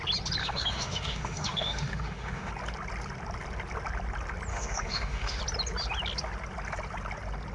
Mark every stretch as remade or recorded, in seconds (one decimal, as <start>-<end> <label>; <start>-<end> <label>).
0.0-0.4 recorded; 0.4-2.5 remade; 2.5-4.5 recorded; 4.5-5.4 remade; 5.4-7.5 recorded